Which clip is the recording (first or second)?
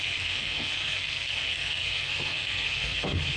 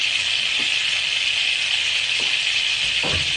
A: second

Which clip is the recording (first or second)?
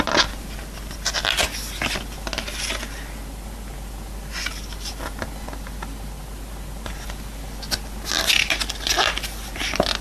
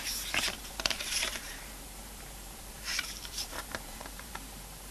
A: first